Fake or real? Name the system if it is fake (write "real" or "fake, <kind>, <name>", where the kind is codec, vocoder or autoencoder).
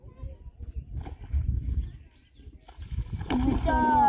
real